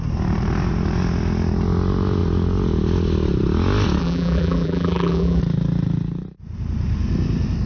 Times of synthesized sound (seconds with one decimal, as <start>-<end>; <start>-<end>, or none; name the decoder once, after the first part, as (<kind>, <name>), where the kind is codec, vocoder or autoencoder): 4.0-5.4 (vocoder, BigVGAN v2)